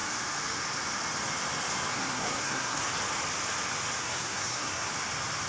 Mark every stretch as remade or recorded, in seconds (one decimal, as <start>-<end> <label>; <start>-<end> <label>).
0.0-1.9 recorded; 1.9-2.9 remade; 2.9-4.0 recorded; 4.0-4.9 remade; 4.9-5.5 recorded